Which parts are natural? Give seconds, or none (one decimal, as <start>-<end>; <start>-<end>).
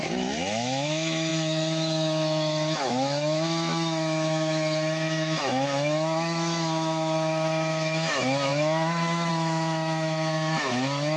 none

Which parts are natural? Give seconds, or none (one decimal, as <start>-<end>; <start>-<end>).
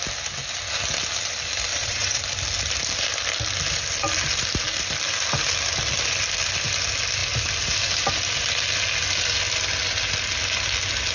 0.0-1.7; 2.2-11.1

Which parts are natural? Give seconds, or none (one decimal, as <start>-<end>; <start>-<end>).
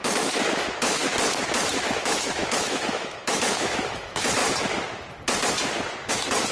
1.0-1.7; 4.4-6.1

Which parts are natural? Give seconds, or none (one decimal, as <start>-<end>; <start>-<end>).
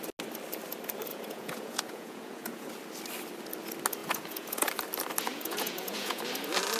0.0-1.1; 2.7-4.0; 4.7-5.3; 6.2-6.8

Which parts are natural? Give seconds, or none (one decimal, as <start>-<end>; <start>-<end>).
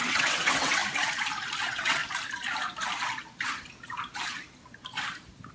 0.8-1.6; 2.0-5.5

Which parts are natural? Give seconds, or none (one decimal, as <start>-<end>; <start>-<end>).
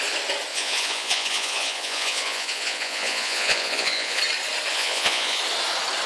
0.0-0.5; 4.2-4.7; 5.4-6.1